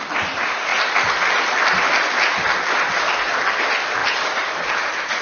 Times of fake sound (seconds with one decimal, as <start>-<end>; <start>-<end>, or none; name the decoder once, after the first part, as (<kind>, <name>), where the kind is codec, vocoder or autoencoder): 4.0-5.2 (vocoder, BigVGAN v2)